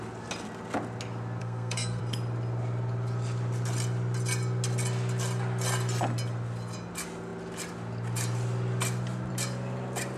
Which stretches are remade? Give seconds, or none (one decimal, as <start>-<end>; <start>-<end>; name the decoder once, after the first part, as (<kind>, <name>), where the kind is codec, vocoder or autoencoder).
1.4-2.0 (codec, SNAC)

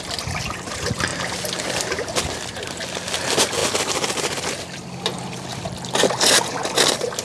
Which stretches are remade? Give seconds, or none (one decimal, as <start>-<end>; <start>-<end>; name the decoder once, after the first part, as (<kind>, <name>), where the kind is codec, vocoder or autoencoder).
none

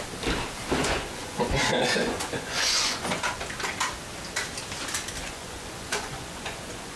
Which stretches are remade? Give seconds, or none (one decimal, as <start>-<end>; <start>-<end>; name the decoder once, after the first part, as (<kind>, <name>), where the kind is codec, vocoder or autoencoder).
0.8-3.4 (vocoder, Vocos); 5.2-7.0

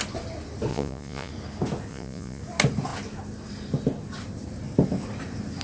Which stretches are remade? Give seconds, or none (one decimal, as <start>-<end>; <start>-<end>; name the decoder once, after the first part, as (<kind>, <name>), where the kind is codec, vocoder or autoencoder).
0.7-1.3 (vocoder, Vocos); 1.9-2.4